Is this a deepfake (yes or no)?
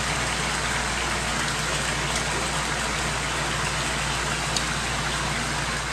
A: no